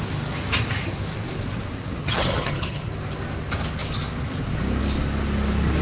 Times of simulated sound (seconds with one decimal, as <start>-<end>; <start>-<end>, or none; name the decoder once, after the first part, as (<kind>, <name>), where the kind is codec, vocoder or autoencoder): 2.0-2.9 (vocoder, HiFi-GAN)